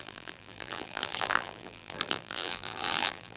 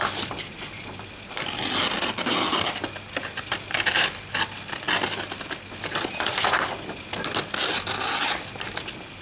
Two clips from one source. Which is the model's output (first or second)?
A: first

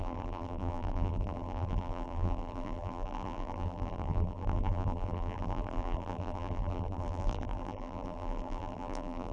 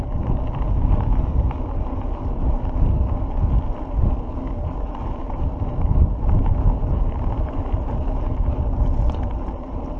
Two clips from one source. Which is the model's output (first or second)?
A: first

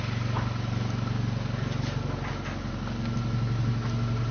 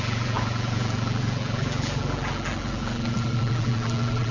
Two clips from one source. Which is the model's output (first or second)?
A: second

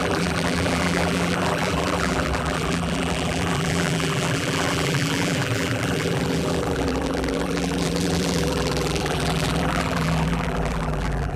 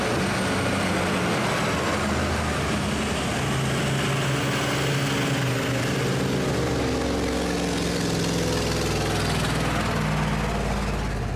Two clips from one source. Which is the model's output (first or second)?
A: first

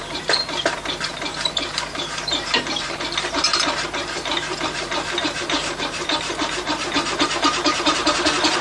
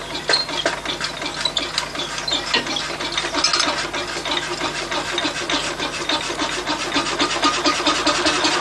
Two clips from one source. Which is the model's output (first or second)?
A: first